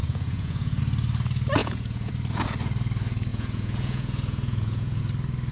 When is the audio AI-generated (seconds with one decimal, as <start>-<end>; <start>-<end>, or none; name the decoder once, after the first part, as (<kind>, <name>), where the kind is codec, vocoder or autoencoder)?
0.0-0.8 (vocoder, Vocos); 1.6-2.1; 3.3-5.0